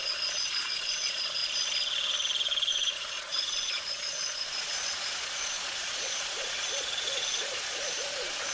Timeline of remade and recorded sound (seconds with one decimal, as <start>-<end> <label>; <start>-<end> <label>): 0.0-1.4 remade; 1.4-2.7 recorded; 2.7-8.5 remade